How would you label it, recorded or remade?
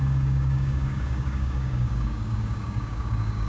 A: remade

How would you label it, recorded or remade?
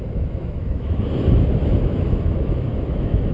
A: remade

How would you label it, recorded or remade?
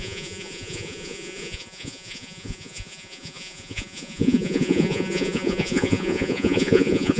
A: remade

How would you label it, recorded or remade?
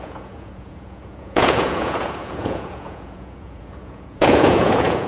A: remade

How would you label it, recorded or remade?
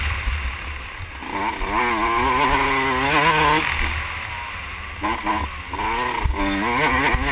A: recorded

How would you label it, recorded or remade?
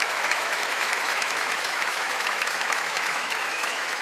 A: remade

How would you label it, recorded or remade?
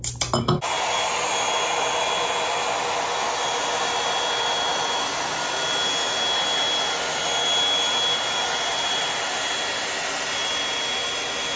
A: recorded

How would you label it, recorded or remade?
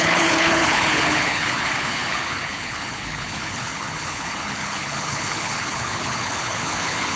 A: remade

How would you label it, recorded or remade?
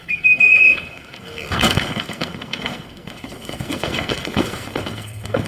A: remade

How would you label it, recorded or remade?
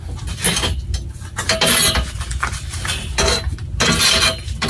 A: recorded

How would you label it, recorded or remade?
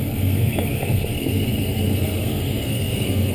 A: remade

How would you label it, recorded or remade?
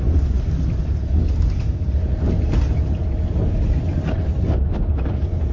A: recorded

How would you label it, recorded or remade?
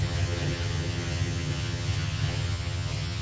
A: remade